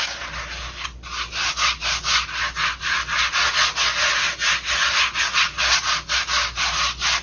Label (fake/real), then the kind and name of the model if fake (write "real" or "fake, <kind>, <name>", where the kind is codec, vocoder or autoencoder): real